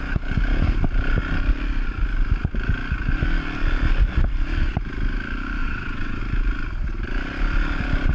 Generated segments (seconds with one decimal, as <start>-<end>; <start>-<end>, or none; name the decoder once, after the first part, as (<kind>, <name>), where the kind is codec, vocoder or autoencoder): 5.6-6.2 (vocoder, WaveNeXt)